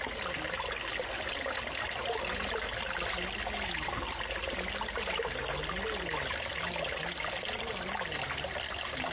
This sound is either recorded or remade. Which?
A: recorded